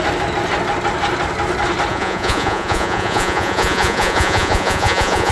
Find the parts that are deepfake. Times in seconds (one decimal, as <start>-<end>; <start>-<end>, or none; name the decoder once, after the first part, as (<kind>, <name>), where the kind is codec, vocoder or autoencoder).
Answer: 1.9-5.3 (vocoder, Vocos)

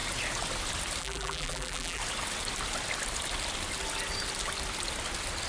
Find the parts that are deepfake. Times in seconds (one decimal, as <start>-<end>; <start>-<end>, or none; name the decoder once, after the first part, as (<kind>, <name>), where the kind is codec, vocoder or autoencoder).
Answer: 1.0-2.0 (vocoder, BigVGAN v2)